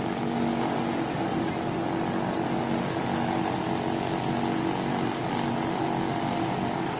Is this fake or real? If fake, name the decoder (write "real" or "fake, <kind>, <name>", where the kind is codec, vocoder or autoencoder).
real